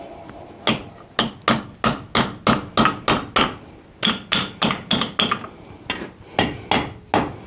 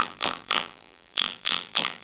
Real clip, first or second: first